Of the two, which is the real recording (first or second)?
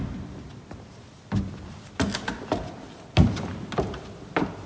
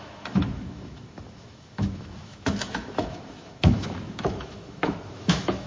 first